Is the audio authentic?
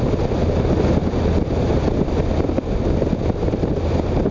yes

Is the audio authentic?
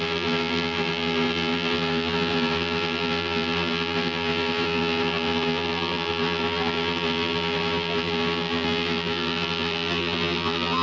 no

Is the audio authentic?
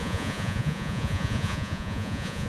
no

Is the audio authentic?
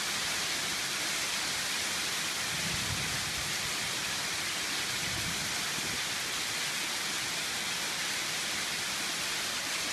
yes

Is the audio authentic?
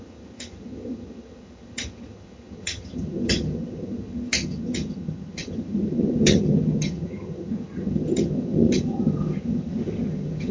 no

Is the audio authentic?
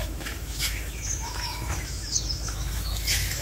no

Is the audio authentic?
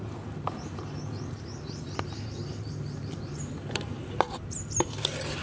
yes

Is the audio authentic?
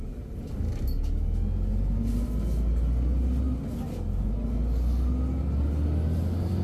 yes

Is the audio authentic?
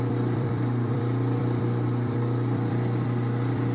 no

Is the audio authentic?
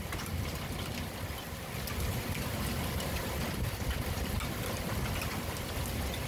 yes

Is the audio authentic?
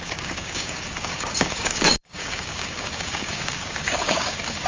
no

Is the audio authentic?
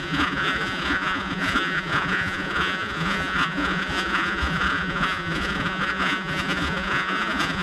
no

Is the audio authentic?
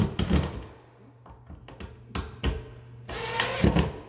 yes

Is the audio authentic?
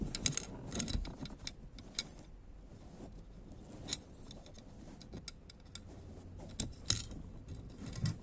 yes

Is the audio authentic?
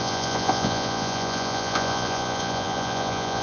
no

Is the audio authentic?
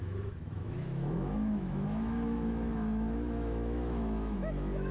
no